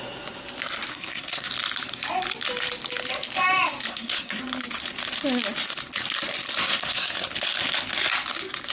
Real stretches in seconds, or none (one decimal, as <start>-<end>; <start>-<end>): 0.0-0.9; 1.5-3.9; 4.4-6.6; 7.3-8.7